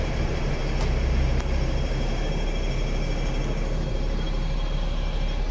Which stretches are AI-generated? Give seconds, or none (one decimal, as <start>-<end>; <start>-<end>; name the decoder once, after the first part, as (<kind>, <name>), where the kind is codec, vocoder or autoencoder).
0.0-0.6 (vocoder, BigVGAN v2); 3.9-5.5